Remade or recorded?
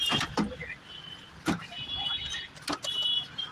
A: recorded